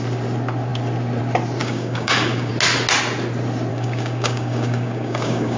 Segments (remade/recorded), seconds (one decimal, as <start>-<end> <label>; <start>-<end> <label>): 0.0-1.6 recorded; 1.6-2.5 remade; 2.5-3.7 recorded; 3.7-5.6 remade